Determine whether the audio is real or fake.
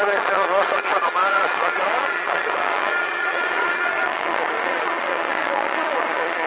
fake